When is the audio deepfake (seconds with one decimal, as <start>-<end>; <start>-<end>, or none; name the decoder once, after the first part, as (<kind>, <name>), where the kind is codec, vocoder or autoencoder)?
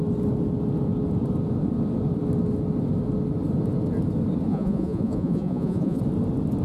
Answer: 4.5-6.0 (vocoder, Vocos)